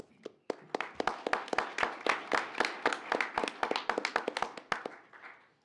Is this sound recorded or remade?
recorded